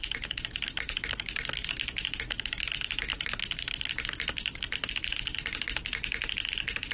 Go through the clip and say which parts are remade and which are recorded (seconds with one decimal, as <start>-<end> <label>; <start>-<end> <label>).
0.0-3.1 recorded; 3.1-4.9 remade; 4.9-6.9 recorded